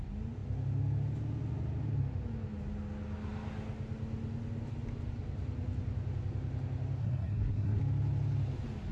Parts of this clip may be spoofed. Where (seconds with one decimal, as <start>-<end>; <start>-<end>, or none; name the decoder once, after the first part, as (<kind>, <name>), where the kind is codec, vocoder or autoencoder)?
7.0-7.8 (codec, SNAC)